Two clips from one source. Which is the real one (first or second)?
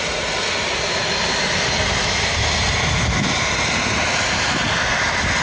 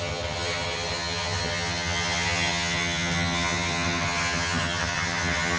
first